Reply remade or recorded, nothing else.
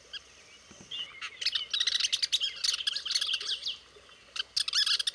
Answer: recorded